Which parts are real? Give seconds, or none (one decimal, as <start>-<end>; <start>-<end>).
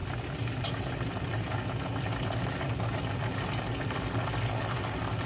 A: 0.0-5.3